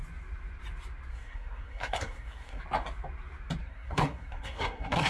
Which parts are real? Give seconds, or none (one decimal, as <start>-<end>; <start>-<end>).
0.0-1.1; 2.6-3.6